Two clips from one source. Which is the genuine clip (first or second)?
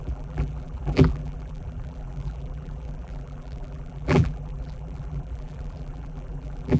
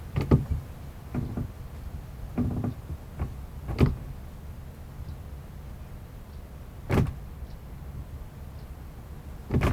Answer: second